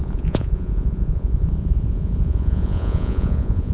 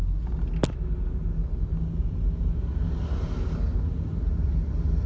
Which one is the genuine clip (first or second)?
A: second